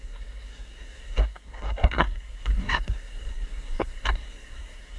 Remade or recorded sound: remade